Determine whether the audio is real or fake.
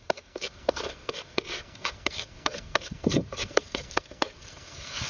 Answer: fake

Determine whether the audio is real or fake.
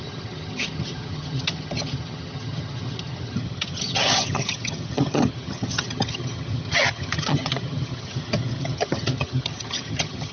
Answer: fake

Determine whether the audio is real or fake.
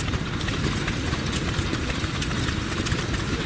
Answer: real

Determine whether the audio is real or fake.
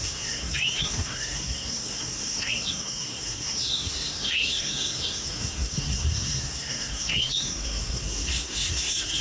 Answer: fake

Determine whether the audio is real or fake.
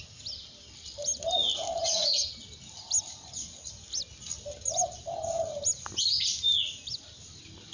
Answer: real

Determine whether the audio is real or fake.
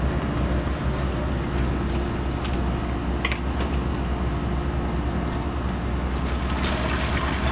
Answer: real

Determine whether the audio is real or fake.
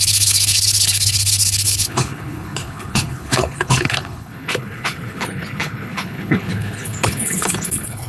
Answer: fake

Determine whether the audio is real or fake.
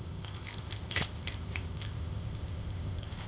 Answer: fake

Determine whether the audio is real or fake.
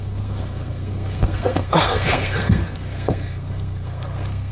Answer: fake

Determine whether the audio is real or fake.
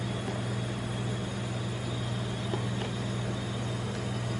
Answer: real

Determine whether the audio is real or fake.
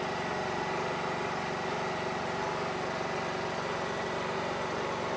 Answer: real